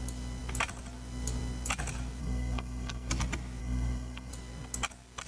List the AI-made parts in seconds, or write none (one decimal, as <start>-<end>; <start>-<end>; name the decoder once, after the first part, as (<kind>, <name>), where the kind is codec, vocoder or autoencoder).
2.2-3.1 (codec, SNAC); 3.6-4.3